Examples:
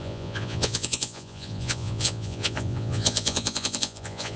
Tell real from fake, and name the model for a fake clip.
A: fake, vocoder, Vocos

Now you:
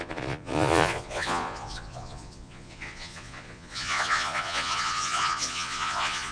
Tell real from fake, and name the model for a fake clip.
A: fake, vocoder, Vocos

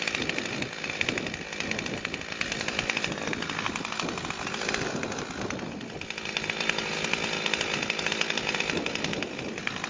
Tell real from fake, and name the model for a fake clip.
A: real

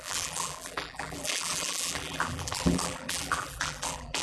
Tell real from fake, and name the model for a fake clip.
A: fake, vocoder, BigVGAN v2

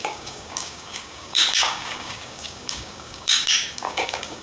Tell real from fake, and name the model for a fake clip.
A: fake, codec, DAC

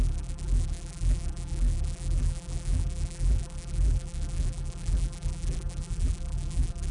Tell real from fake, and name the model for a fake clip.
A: fake, vocoder, BigVGAN v2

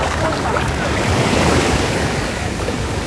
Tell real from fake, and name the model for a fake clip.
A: fake, codec, DAC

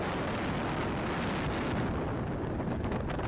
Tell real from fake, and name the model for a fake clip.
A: real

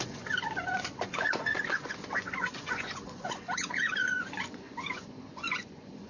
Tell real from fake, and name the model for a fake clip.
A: fake, vocoder, Vocos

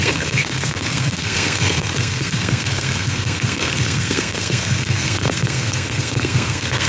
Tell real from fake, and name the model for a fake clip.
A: fake, codec, SNAC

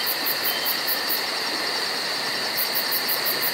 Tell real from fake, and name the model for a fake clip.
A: fake, vocoder, BigVGAN v2